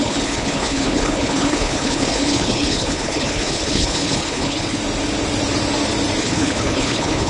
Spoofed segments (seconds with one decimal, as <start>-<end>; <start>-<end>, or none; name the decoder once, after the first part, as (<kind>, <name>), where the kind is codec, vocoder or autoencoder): 0.0-4.8 (codec, HILCodec); 6.2-7.3